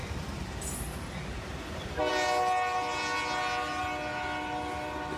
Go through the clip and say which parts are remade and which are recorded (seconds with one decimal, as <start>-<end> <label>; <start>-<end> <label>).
0.0-5.2 recorded